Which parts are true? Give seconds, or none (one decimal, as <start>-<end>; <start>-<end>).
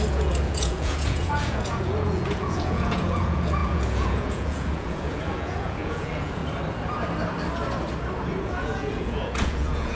6.4-8.4